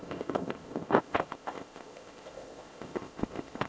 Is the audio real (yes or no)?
no